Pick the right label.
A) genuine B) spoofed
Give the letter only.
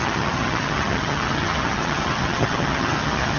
B